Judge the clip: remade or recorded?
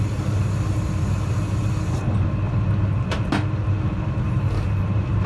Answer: recorded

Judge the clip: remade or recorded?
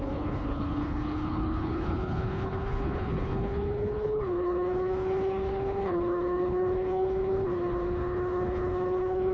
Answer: remade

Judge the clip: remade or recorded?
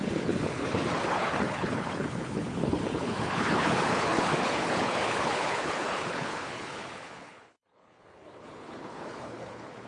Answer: remade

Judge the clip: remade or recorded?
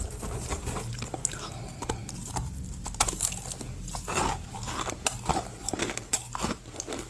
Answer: recorded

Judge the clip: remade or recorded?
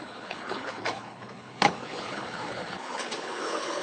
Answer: remade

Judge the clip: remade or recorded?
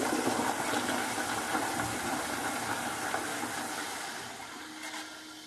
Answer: recorded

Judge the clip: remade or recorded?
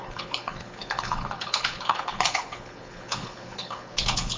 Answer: remade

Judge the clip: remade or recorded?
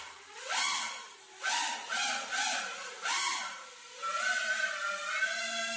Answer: recorded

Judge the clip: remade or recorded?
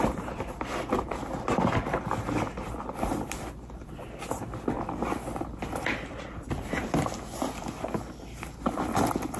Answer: recorded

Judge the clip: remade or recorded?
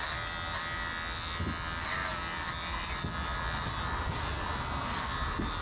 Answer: recorded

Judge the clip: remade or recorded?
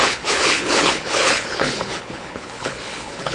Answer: remade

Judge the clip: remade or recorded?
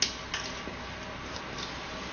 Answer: recorded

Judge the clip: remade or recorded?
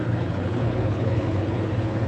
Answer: remade